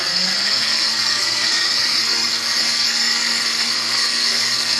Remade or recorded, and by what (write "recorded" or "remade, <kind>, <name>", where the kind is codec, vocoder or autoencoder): remade, codec, SNAC